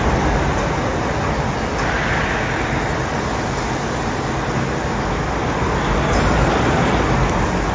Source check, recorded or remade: recorded